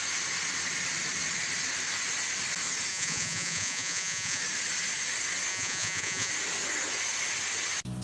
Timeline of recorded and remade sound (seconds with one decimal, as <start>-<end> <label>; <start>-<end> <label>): 0.0-2.9 recorded; 2.9-4.4 remade; 4.4-5.5 recorded; 5.5-6.3 remade; 6.3-8.0 recorded